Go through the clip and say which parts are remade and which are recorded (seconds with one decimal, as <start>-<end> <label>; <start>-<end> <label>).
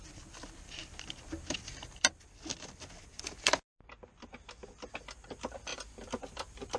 0.0-6.8 recorded